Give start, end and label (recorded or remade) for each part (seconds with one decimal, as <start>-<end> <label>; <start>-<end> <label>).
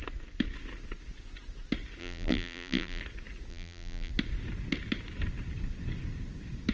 0.0-2.0 recorded; 2.0-3.0 remade; 3.0-3.5 recorded; 3.5-4.1 remade; 4.1-6.7 recorded